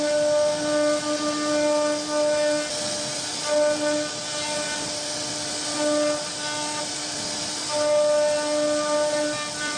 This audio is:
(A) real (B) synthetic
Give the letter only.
A